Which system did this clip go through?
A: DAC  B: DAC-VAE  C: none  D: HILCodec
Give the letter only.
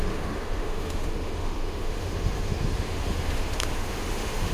B